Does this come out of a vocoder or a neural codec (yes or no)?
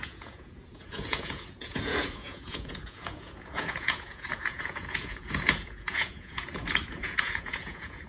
yes